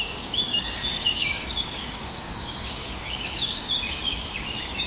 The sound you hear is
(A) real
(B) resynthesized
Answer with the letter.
B